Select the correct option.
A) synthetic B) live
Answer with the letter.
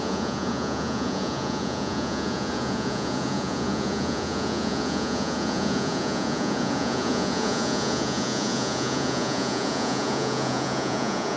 A